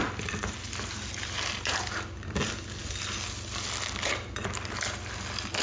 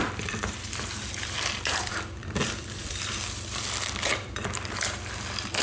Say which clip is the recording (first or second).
first